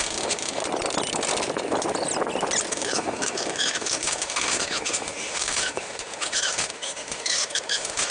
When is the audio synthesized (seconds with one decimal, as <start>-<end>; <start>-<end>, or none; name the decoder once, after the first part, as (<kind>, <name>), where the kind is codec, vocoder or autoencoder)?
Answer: 0.0-0.6 (autoencoder, DAC-VAE); 2.7-8.1